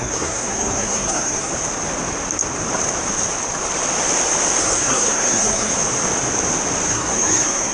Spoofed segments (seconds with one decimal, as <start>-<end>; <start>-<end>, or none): 0.0-1.5; 4.6-5.7; 6.9-7.7